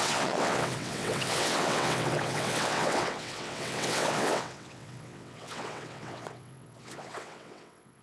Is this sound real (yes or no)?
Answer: no